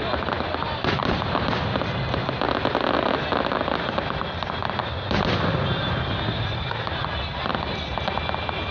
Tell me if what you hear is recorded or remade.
recorded